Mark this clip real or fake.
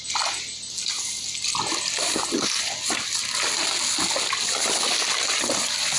real